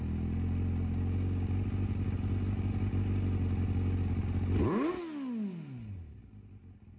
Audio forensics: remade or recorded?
recorded